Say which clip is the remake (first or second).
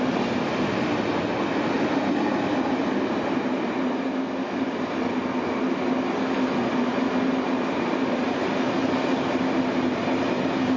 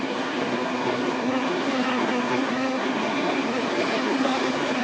second